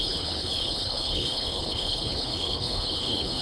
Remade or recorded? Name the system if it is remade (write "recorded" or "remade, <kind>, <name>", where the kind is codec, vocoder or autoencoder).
remade, codec, HILCodec